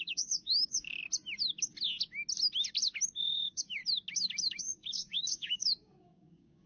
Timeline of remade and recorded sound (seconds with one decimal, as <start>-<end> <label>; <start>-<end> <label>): 0.0-1.0 remade; 1.0-3.2 recorded; 3.2-3.8 remade; 3.8-4.5 recorded; 4.5-6.7 remade